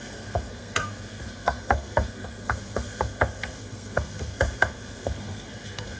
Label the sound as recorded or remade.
remade